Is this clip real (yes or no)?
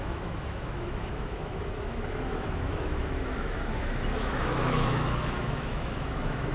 no